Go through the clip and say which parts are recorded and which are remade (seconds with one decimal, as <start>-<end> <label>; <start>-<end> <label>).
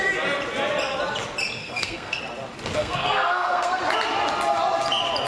0.0-1.6 recorded; 1.6-2.2 remade; 2.2-2.8 recorded; 2.8-3.8 remade; 3.8-5.3 recorded